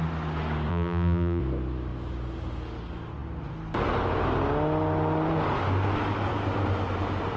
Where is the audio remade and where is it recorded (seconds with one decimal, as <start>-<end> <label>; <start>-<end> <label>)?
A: 0.0-0.7 recorded; 0.7-1.4 remade; 1.4-7.4 recorded